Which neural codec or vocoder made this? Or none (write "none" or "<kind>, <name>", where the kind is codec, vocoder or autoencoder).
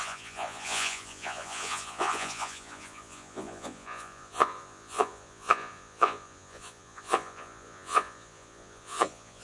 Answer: vocoder, Vocos